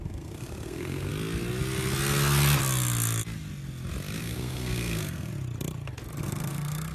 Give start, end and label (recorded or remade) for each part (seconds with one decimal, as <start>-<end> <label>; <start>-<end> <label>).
0.0-1.1 remade; 1.1-4.2 recorded; 4.2-5.3 remade; 5.3-6.2 recorded; 6.2-6.9 remade